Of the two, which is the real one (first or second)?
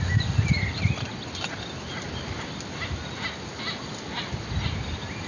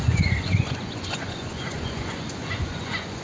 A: first